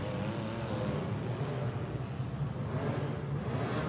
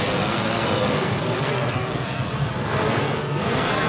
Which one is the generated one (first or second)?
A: second